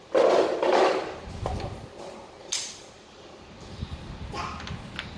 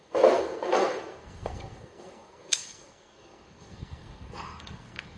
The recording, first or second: first